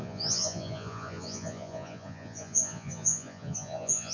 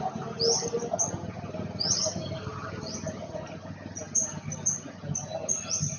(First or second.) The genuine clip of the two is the second